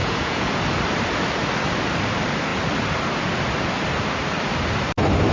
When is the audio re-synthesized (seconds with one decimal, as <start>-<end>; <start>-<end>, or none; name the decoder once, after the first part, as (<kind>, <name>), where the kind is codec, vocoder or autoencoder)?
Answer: 0.0-0.6 (vocoder, Vocos)